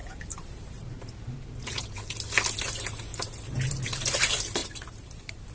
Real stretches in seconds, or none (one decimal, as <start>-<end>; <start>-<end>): 2.1-5.5